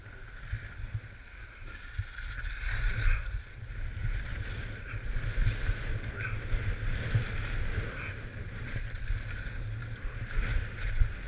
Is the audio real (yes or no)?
yes